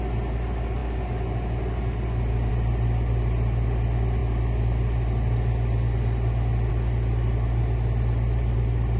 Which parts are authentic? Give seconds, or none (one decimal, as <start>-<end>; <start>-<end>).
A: 0.0-9.0